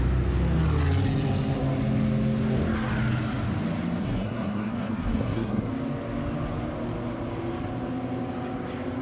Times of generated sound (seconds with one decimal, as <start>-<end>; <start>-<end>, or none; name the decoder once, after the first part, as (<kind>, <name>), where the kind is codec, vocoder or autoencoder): 4.0-5.7 (codec, SNAC)